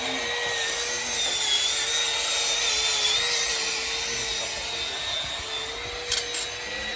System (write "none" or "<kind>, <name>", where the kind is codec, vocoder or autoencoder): none